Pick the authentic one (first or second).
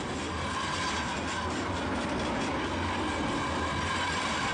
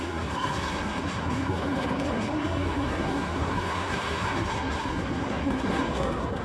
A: first